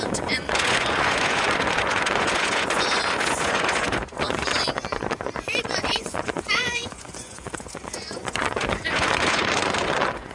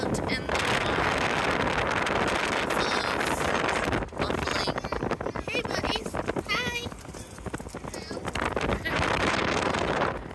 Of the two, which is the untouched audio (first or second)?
second